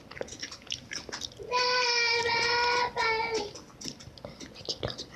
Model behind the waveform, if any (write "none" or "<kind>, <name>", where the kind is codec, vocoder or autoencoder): none